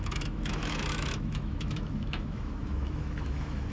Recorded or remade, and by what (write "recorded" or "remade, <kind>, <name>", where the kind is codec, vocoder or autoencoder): remade, autoencoder, DAC-VAE